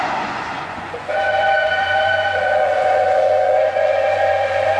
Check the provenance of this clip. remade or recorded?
remade